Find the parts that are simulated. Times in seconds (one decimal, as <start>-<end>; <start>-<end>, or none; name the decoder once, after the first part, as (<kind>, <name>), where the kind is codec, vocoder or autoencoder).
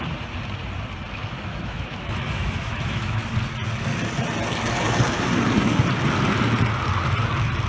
1.5-3.2 (autoencoder, DAC-VAE)